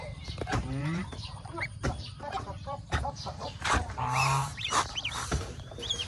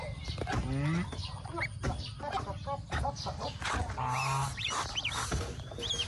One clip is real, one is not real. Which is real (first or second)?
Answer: second